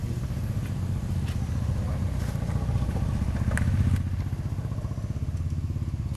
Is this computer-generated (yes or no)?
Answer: no